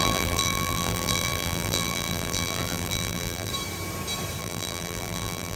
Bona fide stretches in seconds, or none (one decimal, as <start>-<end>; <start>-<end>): 3.5-4.4